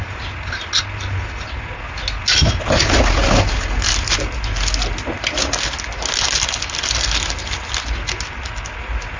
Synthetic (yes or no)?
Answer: no